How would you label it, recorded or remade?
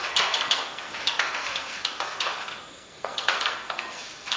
remade